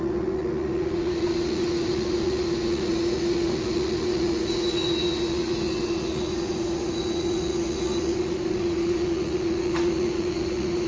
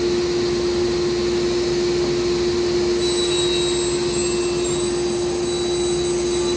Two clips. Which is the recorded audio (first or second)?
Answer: second